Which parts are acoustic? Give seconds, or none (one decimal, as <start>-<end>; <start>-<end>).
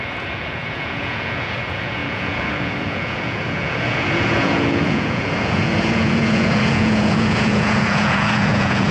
none